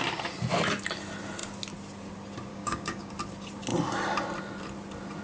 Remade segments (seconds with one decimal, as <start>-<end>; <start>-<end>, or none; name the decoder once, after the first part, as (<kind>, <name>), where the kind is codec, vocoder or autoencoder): 2.5-3.1 (codec, DAC)